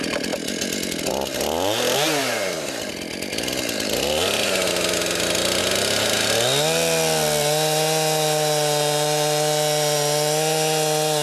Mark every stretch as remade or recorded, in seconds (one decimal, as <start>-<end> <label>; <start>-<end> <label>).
0.0-2.2 recorded; 2.2-2.9 remade; 2.9-11.2 recorded